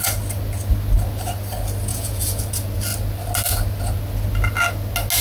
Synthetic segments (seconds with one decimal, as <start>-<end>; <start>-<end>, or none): 1.9-2.4